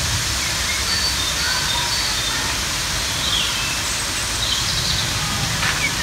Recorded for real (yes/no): yes